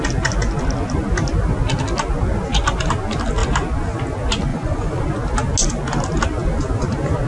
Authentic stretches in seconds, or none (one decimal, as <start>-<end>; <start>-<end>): 0.0-4.5; 5.0-7.3